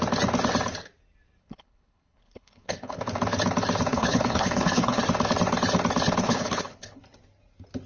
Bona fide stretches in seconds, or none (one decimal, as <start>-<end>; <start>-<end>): 0.0-1.4; 3.0-3.9; 5.0-6.2; 7.0-7.9